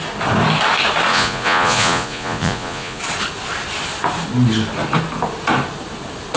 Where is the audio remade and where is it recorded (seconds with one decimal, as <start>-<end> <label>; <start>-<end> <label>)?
0.0-1.1 recorded; 1.1-3.0 remade; 3.0-6.4 recorded